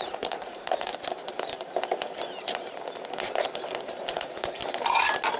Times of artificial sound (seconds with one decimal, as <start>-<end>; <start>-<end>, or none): 0.0-0.9; 4.1-4.6